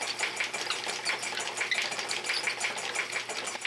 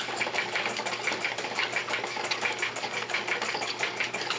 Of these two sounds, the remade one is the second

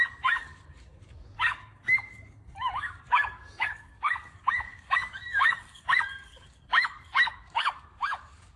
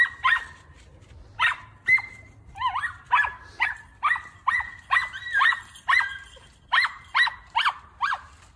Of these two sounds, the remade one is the first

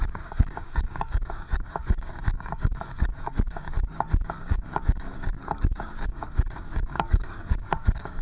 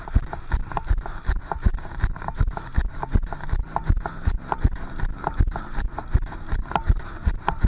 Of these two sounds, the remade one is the first